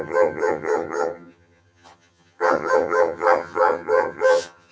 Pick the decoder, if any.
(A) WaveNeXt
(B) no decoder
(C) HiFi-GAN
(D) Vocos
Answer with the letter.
C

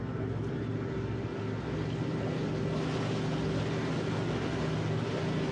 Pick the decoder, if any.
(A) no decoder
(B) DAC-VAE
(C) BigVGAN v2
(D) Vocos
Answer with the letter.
A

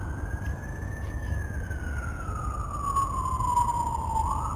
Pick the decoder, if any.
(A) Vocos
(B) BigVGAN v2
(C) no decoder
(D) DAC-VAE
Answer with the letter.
C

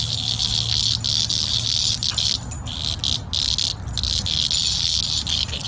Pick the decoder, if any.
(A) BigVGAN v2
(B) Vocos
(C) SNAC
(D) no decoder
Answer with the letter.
D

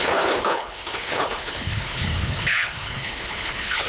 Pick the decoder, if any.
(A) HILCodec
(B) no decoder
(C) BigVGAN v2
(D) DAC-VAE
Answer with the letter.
A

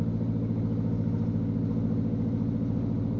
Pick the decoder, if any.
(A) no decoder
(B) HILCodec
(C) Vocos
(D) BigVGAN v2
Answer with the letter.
A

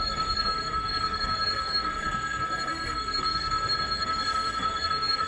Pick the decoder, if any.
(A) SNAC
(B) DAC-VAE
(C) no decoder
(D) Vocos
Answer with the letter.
A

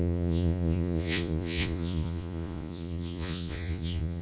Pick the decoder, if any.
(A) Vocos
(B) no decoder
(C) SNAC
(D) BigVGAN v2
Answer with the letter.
A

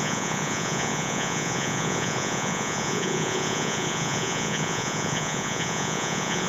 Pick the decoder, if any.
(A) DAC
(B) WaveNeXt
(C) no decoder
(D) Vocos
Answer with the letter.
D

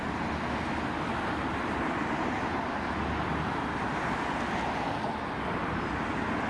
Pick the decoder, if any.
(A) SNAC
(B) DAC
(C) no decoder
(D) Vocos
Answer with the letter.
C